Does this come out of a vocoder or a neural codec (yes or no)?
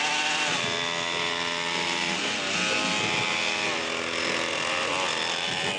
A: no